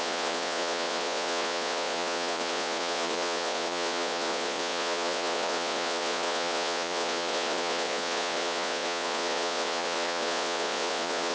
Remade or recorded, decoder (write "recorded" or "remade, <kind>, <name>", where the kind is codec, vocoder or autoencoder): remade, vocoder, Vocos